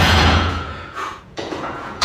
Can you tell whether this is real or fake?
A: fake